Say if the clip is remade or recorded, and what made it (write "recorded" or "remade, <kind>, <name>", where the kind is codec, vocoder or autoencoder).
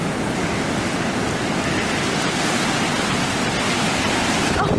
recorded